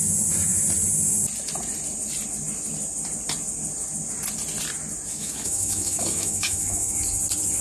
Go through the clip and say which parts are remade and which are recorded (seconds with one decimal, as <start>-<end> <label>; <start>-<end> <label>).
0.0-5.1 recorded; 5.1-6.9 remade; 6.9-7.6 recorded